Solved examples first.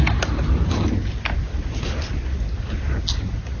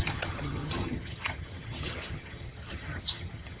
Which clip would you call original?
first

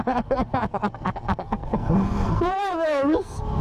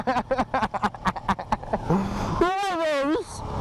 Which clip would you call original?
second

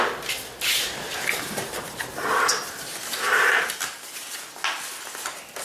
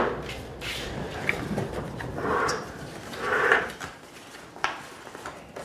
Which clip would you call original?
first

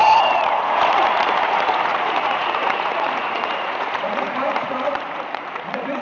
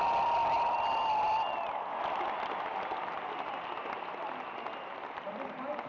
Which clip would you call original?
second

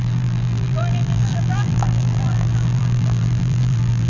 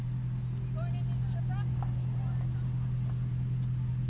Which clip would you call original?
second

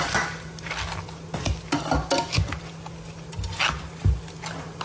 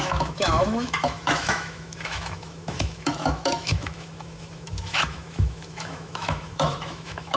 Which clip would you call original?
first